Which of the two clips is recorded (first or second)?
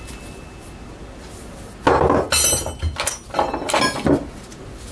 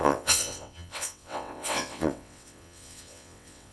first